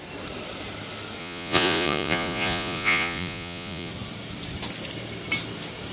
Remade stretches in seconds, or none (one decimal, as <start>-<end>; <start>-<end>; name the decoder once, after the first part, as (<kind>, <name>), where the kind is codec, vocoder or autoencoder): 1.2-3.9 (vocoder, Vocos)